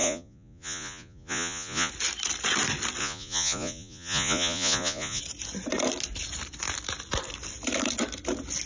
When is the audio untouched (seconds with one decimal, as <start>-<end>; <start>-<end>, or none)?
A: 1.9-3.0; 5.2-8.7